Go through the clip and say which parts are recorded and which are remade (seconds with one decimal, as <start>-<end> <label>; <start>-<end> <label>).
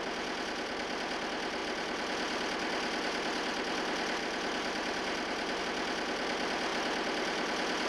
0.0-7.9 recorded